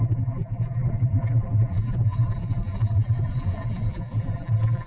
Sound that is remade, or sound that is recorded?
remade